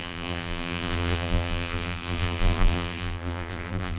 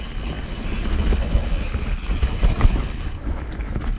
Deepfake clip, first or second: first